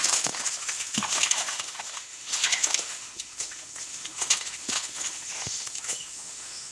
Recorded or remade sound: remade